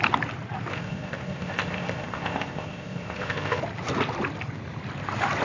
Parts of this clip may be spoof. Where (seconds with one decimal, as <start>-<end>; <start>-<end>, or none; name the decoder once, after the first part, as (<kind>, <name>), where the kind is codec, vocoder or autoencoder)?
0.7-3.6 (codec, ZipCodec)